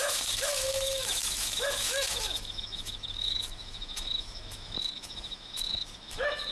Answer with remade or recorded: remade